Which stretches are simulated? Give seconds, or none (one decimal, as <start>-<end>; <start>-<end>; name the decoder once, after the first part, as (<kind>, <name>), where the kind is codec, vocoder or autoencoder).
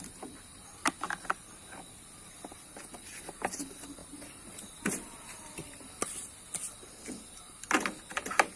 4.0-6.4 (vocoder, BigVGAN v2)